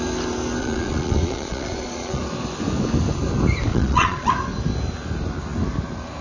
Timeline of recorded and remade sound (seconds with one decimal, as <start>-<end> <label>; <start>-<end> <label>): 0.0-0.6 recorded; 0.6-2.2 remade; 2.2-3.7 recorded; 3.7-4.3 remade; 4.3-6.2 recorded